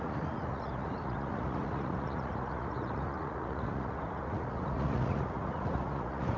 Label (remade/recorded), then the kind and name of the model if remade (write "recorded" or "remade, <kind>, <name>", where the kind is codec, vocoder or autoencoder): remade, vocoder, Vocos